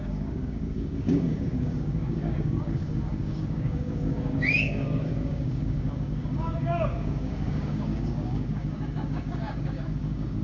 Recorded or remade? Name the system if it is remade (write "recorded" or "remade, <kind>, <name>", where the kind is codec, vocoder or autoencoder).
remade, codec, DAC